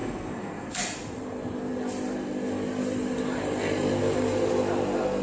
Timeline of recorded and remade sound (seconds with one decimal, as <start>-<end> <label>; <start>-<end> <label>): 0.0-0.8 remade; 0.8-5.2 recorded